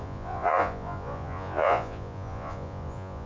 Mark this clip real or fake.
fake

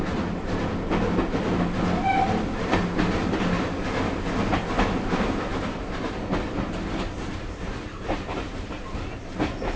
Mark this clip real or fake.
real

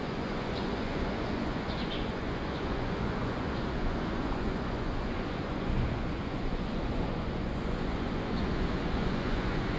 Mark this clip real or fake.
fake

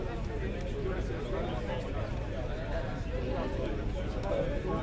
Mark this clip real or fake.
real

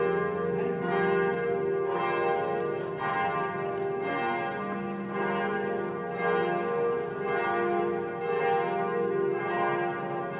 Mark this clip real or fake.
real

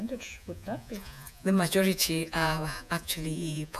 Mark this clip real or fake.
fake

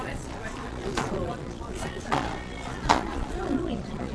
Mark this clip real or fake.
fake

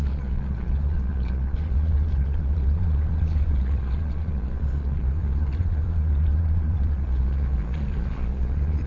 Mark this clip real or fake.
fake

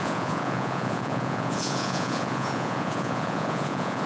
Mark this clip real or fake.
fake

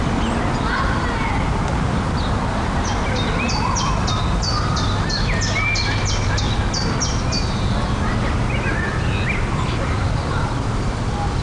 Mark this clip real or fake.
real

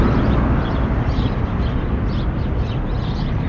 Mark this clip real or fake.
real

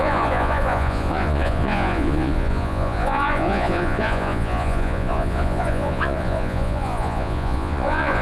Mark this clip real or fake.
fake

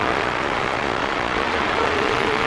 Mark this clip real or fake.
fake